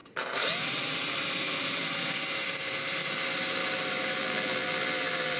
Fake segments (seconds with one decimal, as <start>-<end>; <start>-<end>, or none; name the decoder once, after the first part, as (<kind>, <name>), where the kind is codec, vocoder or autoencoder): 4.2-5.4 (vocoder, BigVGAN v2)